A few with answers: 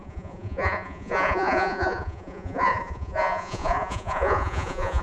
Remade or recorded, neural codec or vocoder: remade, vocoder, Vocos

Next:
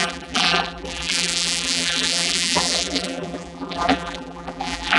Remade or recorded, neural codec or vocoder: remade, vocoder, BigVGAN v2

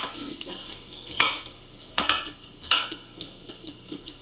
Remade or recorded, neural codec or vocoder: remade, codec, SNAC